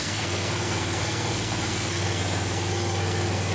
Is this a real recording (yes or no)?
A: no